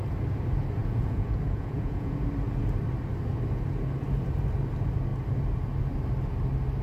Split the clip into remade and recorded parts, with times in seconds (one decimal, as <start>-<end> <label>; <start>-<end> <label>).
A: 0.0-0.8 recorded; 0.8-2.2 remade; 2.2-6.8 recorded